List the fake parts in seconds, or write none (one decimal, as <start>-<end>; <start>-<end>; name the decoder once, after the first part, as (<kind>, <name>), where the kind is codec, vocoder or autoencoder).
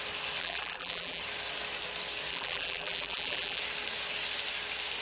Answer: 0.4-1.2 (vocoder, BigVGAN v2); 2.3-3.6